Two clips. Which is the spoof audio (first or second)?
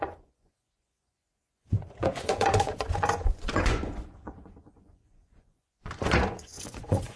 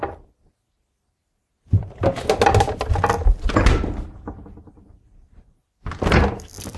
first